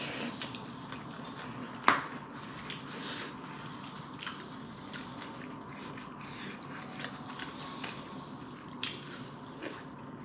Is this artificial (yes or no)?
no